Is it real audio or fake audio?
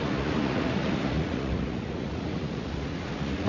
fake